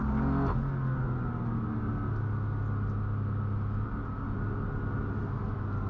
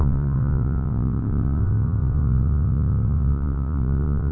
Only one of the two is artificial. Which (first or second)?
second